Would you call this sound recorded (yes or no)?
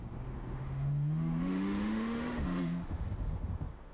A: no